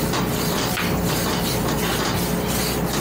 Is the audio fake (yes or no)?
no